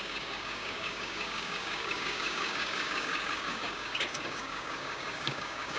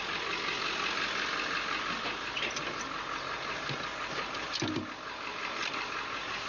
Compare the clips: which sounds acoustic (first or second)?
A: second